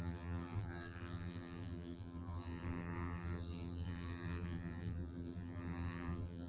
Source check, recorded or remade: remade